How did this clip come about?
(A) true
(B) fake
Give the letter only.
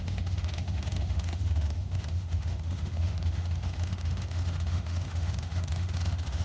B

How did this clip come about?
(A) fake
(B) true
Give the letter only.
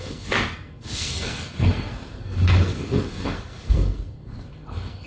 A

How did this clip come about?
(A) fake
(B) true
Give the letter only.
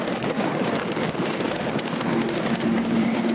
A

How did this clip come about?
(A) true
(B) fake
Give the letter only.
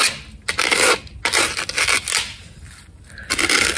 A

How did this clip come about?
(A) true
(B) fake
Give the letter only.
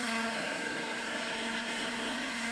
B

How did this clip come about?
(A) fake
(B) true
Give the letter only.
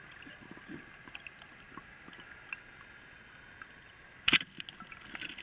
B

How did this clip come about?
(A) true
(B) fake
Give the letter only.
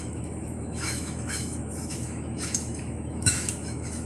B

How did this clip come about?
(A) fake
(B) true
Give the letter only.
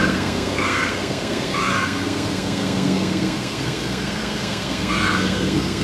A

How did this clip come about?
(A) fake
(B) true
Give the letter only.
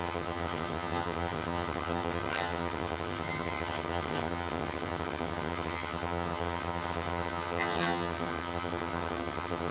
A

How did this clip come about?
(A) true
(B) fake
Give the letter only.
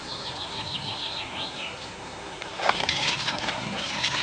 B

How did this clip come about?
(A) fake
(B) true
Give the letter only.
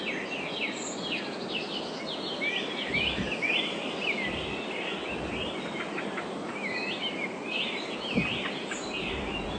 B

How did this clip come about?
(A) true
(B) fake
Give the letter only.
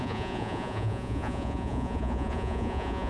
B